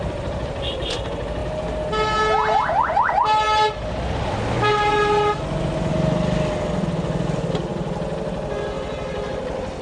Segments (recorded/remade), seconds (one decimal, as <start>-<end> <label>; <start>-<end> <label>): 0.0-9.8 recorded